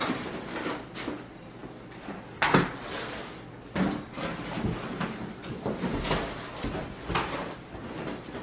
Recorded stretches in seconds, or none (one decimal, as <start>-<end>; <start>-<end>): 0.0-8.4